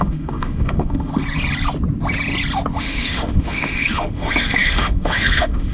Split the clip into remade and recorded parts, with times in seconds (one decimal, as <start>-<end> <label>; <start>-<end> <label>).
0.0-1.1 remade; 1.1-2.8 recorded; 2.8-5.7 remade